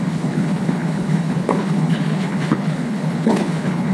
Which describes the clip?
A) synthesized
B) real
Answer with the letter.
A